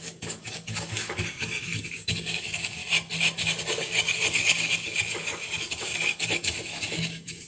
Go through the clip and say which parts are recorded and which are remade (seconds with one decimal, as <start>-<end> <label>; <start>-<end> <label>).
0.0-2.8 remade; 2.8-3.8 recorded; 3.8-7.5 remade